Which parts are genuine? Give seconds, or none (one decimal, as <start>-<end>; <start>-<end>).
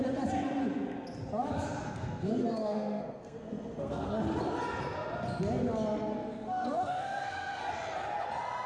0.0-1.8; 4.1-6.1; 7.6-8.7